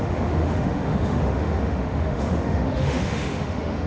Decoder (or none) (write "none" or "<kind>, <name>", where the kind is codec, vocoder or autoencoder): autoencoder, DAC-VAE